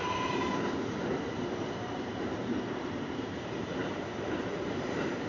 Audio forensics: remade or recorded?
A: remade